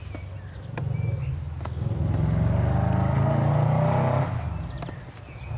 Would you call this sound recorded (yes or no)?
yes